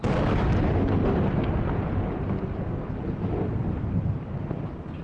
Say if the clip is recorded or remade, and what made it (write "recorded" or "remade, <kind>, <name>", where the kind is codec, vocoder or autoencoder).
recorded